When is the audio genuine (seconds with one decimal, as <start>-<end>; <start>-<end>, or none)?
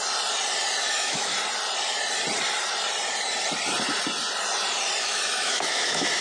0.0-0.9; 1.3-5.0